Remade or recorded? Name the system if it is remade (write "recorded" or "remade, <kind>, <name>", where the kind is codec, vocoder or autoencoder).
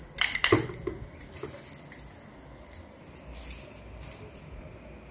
recorded